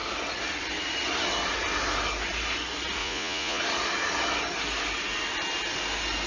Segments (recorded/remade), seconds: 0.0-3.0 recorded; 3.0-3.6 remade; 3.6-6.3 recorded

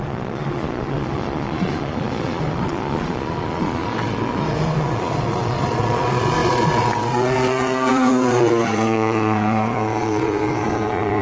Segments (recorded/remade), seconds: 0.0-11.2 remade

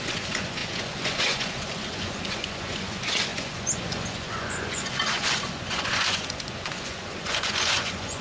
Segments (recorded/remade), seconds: 0.0-8.2 remade